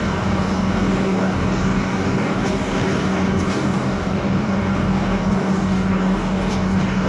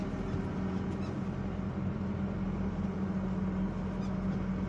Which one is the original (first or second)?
second